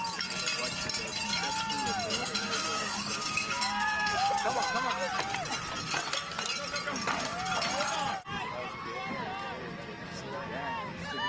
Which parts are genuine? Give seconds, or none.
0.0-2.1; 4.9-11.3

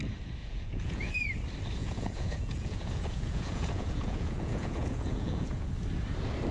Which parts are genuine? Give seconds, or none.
0.0-0.4; 1.1-1.8; 5.7-6.5

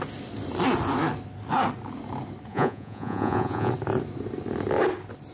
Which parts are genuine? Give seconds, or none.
0.0-2.5; 3.7-5.3

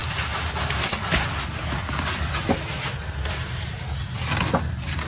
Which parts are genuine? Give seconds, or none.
0.0-3.4; 4.0-5.1

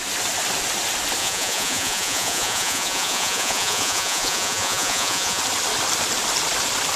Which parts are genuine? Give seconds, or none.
0.0-1.2; 5.4-7.0

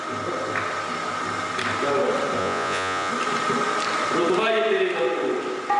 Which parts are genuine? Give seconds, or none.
0.0-2.4; 3.1-5.8